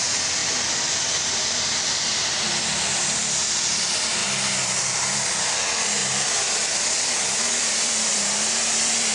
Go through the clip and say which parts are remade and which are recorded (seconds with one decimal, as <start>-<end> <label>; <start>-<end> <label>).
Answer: 0.0-9.1 remade